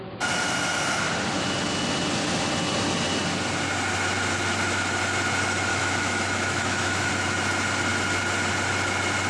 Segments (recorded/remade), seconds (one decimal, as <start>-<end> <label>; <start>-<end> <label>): 0.0-5.7 recorded; 5.7-7.1 remade; 7.1-9.3 recorded